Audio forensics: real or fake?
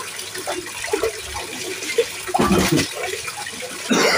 real